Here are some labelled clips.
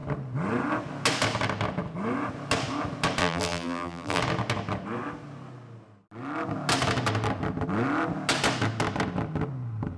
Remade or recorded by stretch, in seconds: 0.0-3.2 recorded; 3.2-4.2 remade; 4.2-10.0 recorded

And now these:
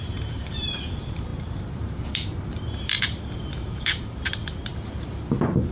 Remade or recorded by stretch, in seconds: 0.0-5.7 remade

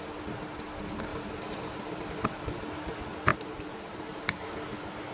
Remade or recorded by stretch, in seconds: 0.0-1.1 recorded; 1.1-2.5 remade; 2.5-3.3 recorded; 3.3-4.4 remade; 4.4-5.1 recorded

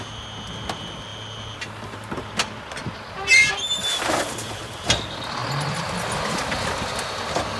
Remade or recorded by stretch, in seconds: 0.0-7.6 recorded